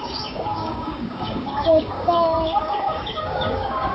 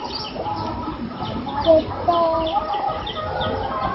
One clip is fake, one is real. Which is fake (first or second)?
first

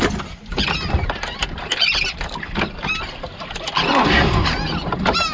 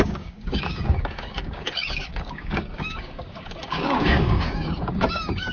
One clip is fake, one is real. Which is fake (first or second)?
second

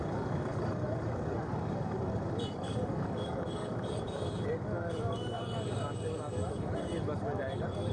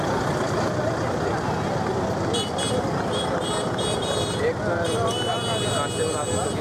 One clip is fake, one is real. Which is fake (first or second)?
first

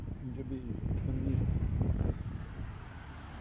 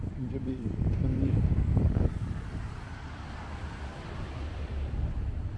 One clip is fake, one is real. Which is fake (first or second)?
second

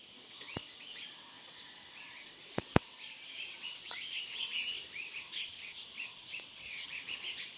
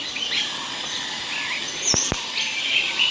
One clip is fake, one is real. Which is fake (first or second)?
first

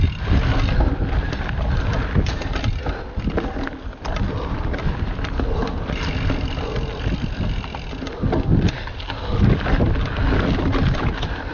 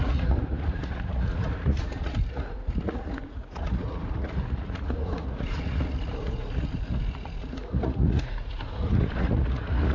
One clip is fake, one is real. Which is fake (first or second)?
second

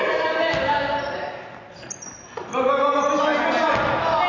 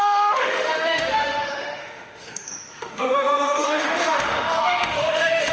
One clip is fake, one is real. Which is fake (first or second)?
second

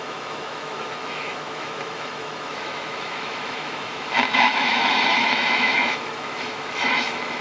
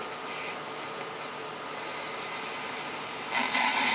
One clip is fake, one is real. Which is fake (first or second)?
first